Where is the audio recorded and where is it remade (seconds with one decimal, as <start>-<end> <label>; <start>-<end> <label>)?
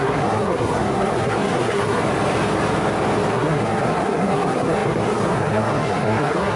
0.0-2.0 remade; 2.0-3.3 recorded; 3.3-6.6 remade